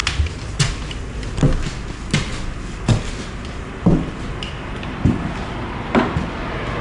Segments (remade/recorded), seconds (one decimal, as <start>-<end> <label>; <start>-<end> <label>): 0.0-0.5 remade; 0.5-6.8 recorded